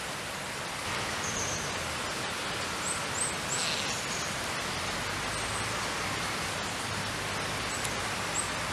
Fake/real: real